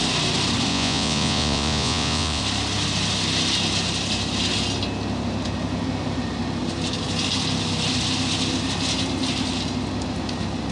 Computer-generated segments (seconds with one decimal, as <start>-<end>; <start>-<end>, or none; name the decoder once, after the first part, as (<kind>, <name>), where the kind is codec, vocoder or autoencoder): 0.7-2.4 (vocoder, Vocos)

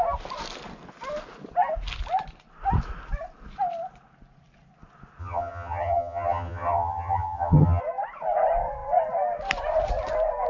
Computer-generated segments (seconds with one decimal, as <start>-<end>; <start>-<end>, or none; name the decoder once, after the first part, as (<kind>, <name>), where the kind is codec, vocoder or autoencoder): 5.2-7.8 (vocoder, HiFi-GAN)

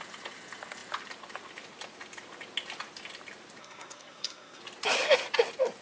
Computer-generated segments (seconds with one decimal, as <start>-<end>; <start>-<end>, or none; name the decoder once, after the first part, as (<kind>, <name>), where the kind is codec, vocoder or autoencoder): 3.6-4.6 (codec, SNAC)

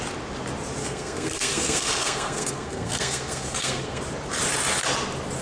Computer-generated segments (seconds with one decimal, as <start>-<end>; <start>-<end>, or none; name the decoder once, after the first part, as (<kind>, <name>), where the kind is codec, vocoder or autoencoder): 0.8-4.0 (codec, SNAC)

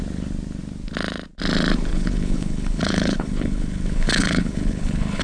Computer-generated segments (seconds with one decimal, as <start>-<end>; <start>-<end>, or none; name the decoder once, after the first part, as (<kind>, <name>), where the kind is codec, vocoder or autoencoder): 1.9-5.2 (codec, HILCodec)

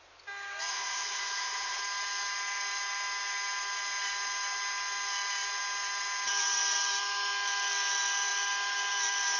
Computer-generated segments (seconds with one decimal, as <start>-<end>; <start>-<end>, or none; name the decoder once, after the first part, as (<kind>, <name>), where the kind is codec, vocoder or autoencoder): 0.7-1.8 (codec, HILCodec)

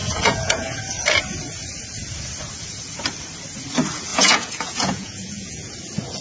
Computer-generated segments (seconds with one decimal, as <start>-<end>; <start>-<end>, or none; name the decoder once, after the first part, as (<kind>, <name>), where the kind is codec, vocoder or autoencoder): 0.0-0.8 (vocoder, Vocos); 4.1-5.7